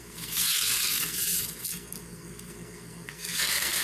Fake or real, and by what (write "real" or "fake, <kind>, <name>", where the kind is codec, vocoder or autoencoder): fake, codec, SNAC